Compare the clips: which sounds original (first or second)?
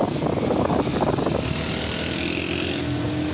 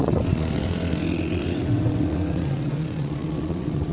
first